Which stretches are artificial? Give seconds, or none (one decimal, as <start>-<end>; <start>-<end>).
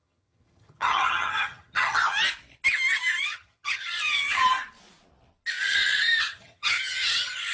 0.0-2.0; 3.2-4.4; 6.2-7.5